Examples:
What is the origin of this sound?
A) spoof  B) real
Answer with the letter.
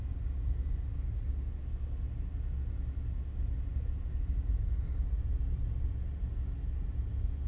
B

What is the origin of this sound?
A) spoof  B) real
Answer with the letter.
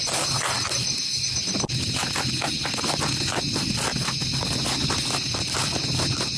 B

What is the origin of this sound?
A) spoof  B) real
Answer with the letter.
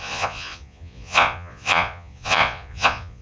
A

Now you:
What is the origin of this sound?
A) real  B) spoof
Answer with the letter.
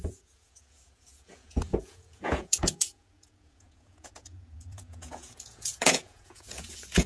B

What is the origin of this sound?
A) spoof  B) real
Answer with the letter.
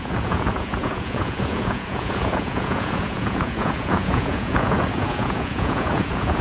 A